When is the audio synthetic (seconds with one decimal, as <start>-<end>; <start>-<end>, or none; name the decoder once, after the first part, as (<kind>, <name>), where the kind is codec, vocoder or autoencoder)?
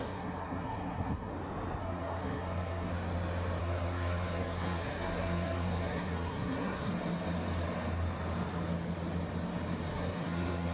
0.0-1.3 (codec, SNAC); 1.8-2.9; 3.6-6.9; 9.9-10.7